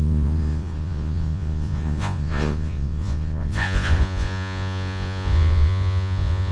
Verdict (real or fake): fake